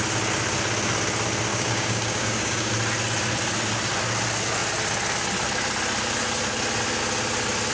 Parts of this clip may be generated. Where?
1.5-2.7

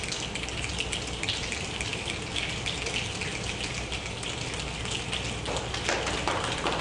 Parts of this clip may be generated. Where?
none

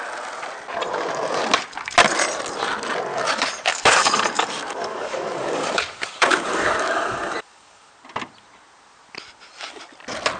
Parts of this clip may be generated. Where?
3.1-7.9

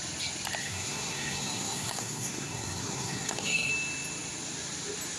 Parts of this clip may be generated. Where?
0.6-3.7

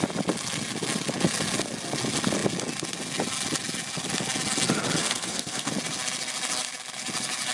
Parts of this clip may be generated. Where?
5.0-5.7

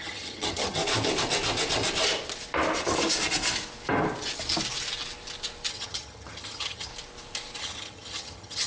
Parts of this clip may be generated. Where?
0.0-0.8; 5.7-6.9; 7.6-8.7